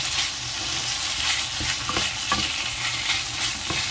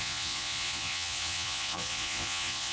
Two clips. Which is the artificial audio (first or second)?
second